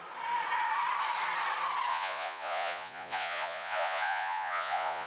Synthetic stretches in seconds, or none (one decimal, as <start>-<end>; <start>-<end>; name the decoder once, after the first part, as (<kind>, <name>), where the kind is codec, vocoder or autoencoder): 1.9-5.1 (vocoder, Vocos)